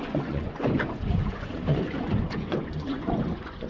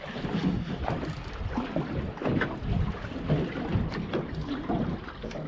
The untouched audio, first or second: second